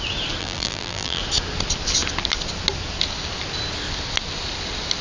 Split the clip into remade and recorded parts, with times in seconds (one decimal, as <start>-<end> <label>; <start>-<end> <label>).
0.0-0.4 recorded; 0.4-1.2 remade; 1.2-5.0 recorded